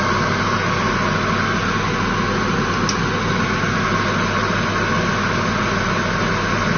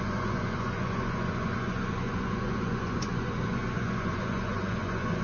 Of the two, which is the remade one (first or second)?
second